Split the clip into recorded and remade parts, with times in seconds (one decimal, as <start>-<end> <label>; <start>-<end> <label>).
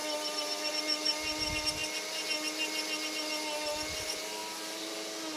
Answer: 0.0-4.4 recorded; 4.4-4.9 remade; 4.9-5.4 recorded